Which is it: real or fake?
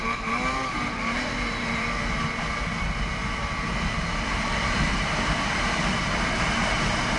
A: fake